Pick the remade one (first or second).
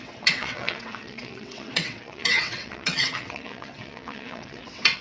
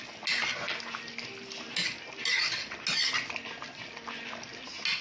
first